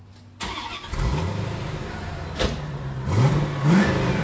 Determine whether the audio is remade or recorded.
recorded